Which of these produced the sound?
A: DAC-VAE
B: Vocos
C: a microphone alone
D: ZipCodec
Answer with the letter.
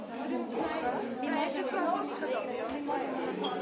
C